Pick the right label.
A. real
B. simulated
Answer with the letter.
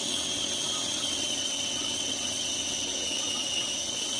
B